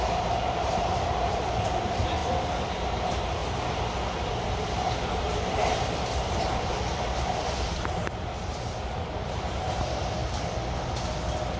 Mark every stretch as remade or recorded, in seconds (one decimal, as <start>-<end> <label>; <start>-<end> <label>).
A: 0.0-2.2 remade; 2.2-3.0 recorded; 3.0-3.4 remade; 3.4-4.3 recorded; 4.3-10.2 remade; 10.2-11.6 recorded